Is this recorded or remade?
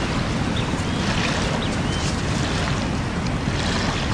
recorded